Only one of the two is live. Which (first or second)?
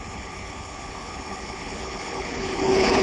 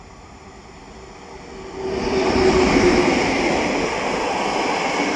second